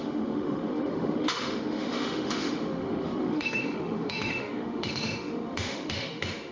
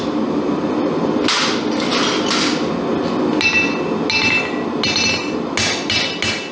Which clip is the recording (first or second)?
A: second